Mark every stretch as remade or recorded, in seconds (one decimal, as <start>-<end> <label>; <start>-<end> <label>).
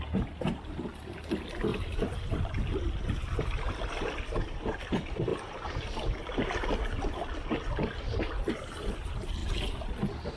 0.0-5.3 remade; 5.3-8.5 recorded; 8.5-9.4 remade; 9.4-10.4 recorded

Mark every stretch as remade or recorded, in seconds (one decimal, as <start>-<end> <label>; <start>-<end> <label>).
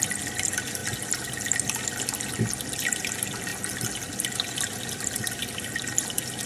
0.0-6.5 recorded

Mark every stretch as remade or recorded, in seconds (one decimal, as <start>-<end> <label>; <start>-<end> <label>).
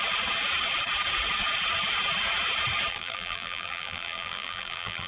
0.0-2.9 recorded; 2.9-5.1 remade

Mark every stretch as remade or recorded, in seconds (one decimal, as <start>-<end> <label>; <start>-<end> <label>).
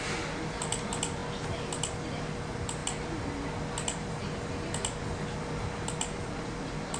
0.0-7.0 recorded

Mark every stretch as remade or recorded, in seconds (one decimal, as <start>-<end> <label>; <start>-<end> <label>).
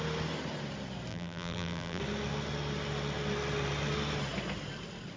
0.0-1.1 recorded; 1.1-2.0 remade; 2.0-5.2 recorded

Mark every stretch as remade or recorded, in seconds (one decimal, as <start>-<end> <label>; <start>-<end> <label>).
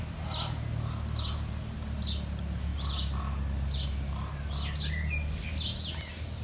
0.0-6.4 recorded